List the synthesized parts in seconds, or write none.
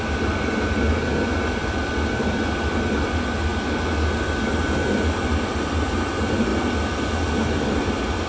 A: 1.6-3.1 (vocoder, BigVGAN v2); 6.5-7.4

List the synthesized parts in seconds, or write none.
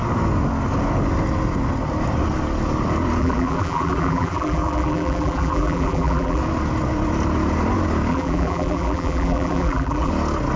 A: 3.2-6.4 (vocoder, BigVGAN v2); 8.1-10.1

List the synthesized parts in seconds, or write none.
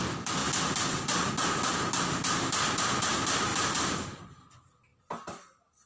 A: 0.4-1.3 (vocoder, BigVGAN v2); 3.5-4.2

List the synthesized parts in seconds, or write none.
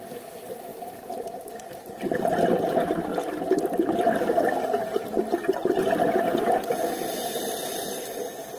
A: 0.7-1.4 (vocoder, BigVGAN v2); 3.1-3.6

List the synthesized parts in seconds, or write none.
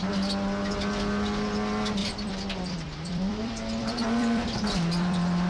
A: 2.0-5.5 (vocoder, BigVGAN v2)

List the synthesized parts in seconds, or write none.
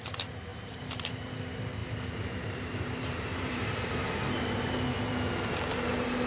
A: 0.5-1.1 (vocoder, BigVGAN v2); 1.8-4.2; 5.7-6.3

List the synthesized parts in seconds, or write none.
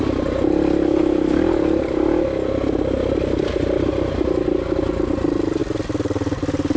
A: none